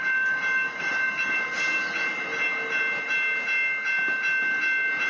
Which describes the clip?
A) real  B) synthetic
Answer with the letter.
A